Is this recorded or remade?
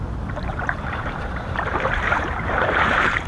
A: remade